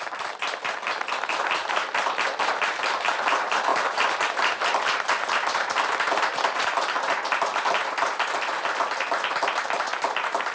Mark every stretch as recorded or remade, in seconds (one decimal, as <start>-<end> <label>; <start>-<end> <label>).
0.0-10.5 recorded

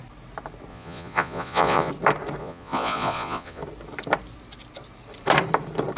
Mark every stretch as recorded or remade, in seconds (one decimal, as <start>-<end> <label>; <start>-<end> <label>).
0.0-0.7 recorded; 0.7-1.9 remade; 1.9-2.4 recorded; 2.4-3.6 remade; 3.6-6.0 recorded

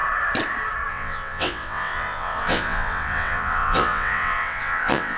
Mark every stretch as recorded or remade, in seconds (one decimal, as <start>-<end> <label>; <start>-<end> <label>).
0.0-0.9 recorded; 0.9-5.2 remade

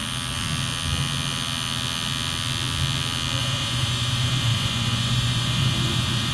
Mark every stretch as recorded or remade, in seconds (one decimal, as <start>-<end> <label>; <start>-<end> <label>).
0.0-3.4 recorded; 3.4-6.3 remade